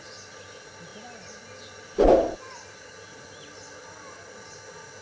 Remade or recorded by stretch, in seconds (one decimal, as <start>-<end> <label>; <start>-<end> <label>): 0.0-5.0 recorded